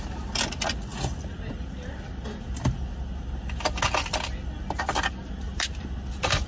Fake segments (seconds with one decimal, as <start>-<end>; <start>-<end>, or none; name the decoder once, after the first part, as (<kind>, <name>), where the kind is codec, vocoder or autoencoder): none